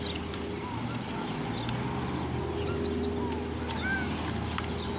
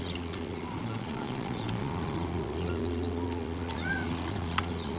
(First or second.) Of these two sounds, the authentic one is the first